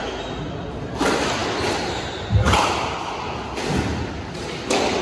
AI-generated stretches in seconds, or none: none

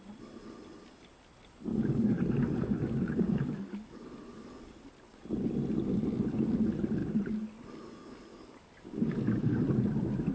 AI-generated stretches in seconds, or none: 1.7-4.5 (codec, DAC); 8.3-9.6